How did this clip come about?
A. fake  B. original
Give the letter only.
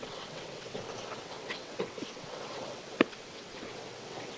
A